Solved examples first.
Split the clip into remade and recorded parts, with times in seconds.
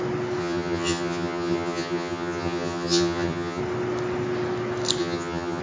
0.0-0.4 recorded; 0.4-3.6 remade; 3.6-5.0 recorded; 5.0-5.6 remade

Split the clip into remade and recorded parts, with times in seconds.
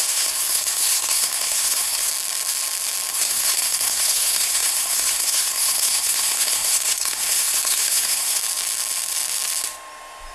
0.0-2.1 remade; 2.1-3.1 recorded; 3.1-8.4 remade; 8.4-10.3 recorded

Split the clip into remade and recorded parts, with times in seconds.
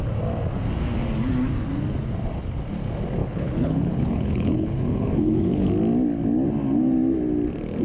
0.0-3.2 recorded; 3.2-5.7 remade; 5.7-7.8 recorded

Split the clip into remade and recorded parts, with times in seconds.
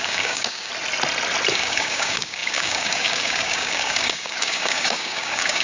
0.0-0.7 remade; 0.7-1.5 recorded; 1.5-5.6 remade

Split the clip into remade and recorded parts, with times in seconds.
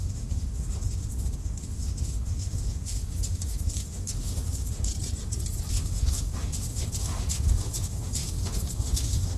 0.0-4.9 remade; 4.9-5.7 recorded; 5.7-9.4 remade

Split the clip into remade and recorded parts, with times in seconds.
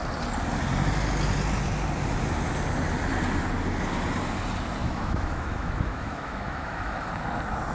0.0-4.8 recorded; 4.8-7.1 remade; 7.1-7.7 recorded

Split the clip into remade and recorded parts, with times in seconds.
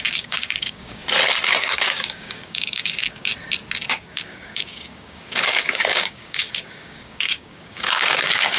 0.0-1.0 remade; 1.0-1.6 recorded; 1.6-3.3 remade; 3.3-3.9 recorded; 3.9-8.6 remade